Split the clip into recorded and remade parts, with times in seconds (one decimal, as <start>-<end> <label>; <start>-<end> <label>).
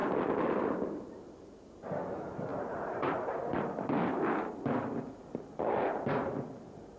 0.0-2.5 recorded; 2.5-3.7 remade; 3.7-7.0 recorded